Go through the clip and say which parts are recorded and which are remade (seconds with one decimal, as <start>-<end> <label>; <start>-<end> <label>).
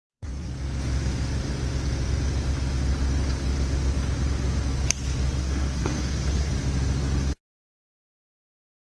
0.0-0.5 remade; 0.5-5.4 recorded; 5.4-6.5 remade; 6.5-7.7 recorded; 7.7-9.0 remade